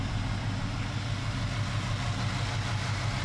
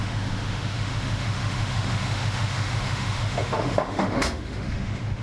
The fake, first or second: second